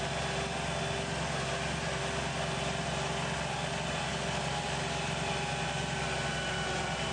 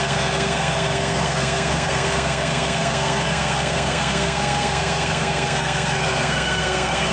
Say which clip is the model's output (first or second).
second